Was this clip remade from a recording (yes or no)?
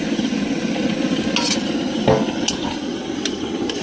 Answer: no